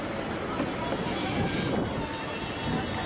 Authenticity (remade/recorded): recorded